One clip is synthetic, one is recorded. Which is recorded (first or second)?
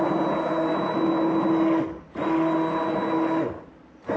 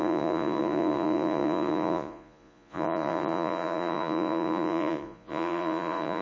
first